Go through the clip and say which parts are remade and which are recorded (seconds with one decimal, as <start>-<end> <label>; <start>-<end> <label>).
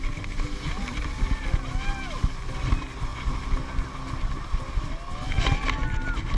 0.0-6.4 recorded